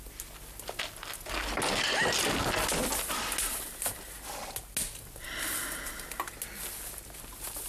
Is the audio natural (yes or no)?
yes